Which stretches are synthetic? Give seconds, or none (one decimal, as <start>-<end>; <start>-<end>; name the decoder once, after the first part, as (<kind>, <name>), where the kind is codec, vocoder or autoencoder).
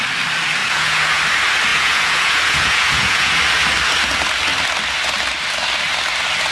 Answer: 0.6-1.2 (vocoder, Vocos); 1.7-3.4